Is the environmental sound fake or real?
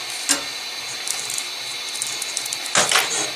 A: real